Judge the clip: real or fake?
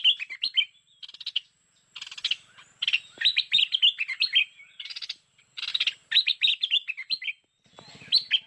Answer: real